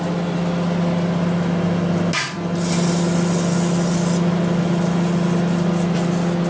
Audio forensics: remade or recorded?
recorded